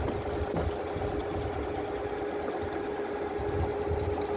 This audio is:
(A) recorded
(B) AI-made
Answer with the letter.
A